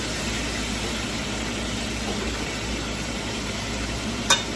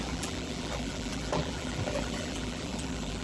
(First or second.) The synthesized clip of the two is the second